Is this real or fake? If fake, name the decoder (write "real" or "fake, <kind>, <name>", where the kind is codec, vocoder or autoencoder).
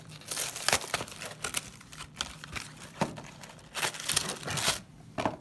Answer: real